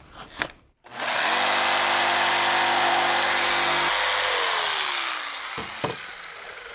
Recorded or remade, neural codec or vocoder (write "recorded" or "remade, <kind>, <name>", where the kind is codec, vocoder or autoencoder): recorded